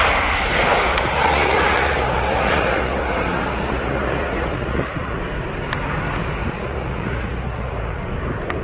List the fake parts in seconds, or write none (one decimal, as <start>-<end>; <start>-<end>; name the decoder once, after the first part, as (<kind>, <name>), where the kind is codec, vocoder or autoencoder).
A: 0.9-5.2 (vocoder, Vocos); 6.4-8.0